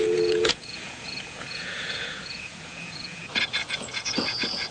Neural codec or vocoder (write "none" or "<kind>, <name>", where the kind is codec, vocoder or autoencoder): vocoder, Vocos